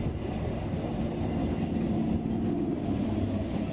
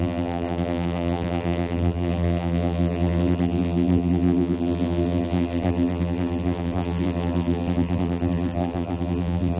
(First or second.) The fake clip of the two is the second